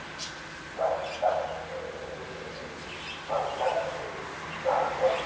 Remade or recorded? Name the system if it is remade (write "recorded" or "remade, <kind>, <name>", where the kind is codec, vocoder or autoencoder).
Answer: recorded